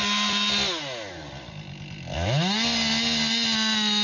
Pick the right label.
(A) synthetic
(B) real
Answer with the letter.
B